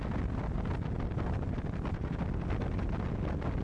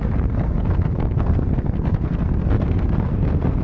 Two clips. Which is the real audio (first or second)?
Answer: first